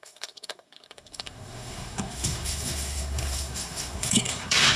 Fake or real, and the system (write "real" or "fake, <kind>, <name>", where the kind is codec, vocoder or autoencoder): fake, codec, SNAC